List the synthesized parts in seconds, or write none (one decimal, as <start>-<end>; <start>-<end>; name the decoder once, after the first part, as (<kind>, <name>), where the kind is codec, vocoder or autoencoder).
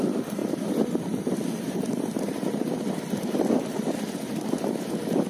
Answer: 0.4-3.6 (vocoder, BigVGAN v2)